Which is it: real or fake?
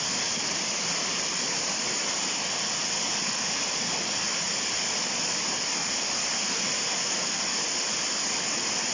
real